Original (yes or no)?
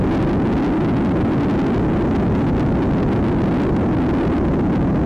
yes